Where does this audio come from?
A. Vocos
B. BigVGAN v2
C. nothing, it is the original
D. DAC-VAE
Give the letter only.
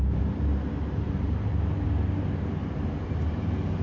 B